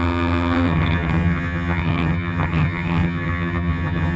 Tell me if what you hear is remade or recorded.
remade